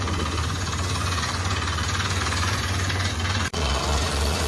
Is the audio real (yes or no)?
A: no